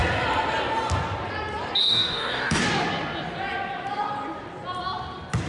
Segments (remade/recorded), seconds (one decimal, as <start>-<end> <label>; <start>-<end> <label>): 0.0-1.8 recorded; 1.8-2.6 remade; 2.6-5.5 recorded